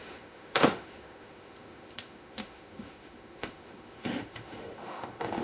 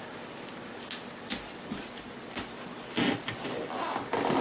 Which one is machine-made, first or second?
first